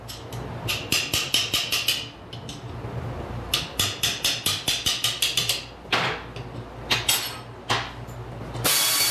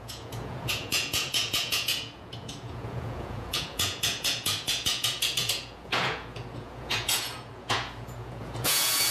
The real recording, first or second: first